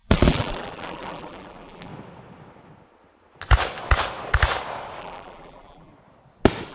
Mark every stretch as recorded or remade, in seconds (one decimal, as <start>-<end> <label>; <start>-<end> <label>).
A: 0.0-1.9 remade; 1.9-5.0 recorded; 5.0-5.9 remade; 5.9-6.7 recorded